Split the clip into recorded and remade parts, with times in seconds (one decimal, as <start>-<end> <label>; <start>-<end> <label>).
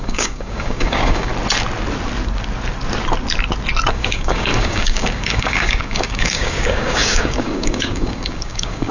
0.0-1.3 remade; 1.3-3.9 recorded; 3.9-8.9 remade